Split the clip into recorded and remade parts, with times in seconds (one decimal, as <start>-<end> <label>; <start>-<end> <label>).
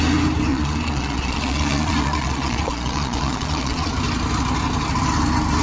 0.0-0.5 recorded; 0.5-3.9 remade; 3.9-5.6 recorded